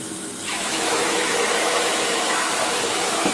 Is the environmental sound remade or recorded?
remade